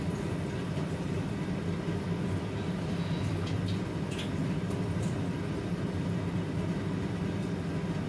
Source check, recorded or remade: recorded